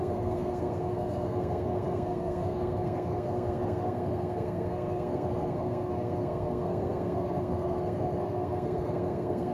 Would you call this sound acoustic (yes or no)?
no